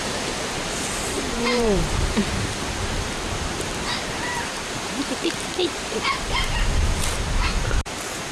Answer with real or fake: fake